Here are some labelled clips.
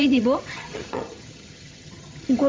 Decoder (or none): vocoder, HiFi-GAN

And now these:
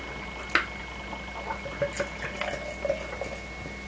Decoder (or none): none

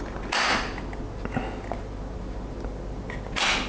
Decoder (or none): none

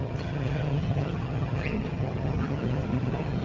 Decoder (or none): vocoder, HiFi-GAN